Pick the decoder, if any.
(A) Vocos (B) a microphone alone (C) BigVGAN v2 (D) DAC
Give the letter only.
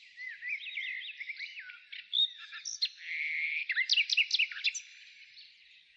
C